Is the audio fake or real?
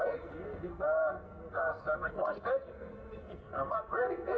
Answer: fake